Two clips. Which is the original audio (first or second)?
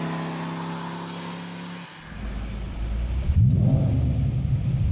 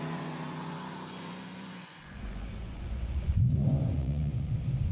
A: first